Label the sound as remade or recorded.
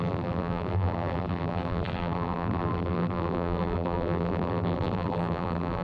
remade